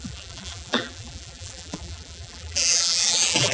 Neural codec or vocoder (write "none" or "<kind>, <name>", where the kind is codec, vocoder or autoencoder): vocoder, BigVGAN v2